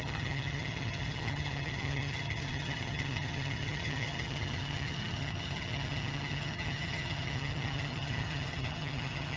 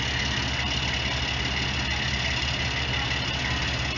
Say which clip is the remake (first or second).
first